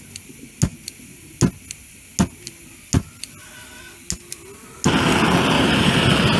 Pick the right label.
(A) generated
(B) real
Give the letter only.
B